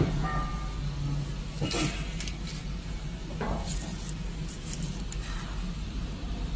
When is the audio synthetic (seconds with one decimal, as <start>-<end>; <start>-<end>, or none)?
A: 2.6-6.6